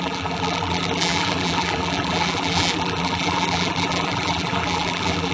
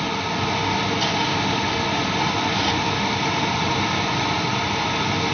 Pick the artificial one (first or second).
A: first